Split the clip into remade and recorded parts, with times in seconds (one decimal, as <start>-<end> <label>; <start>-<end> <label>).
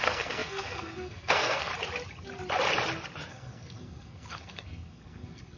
0.0-1.7 remade; 1.7-3.3 recorded; 3.3-5.6 remade